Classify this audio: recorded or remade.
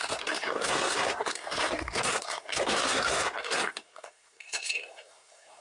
remade